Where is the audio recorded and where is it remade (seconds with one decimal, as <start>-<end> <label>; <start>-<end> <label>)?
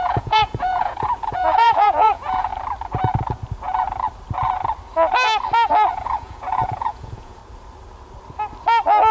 0.0-2.5 remade; 2.5-5.9 recorded; 5.9-7.4 remade; 7.4-9.1 recorded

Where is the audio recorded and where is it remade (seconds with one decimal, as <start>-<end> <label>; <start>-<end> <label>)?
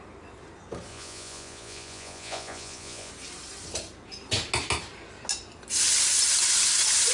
0.0-0.9 recorded; 0.9-3.1 remade; 3.1-7.1 recorded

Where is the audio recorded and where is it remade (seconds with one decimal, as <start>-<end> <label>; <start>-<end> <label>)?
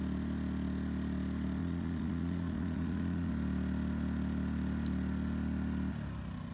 0.0-1.6 recorded; 1.6-3.3 remade; 3.3-6.5 recorded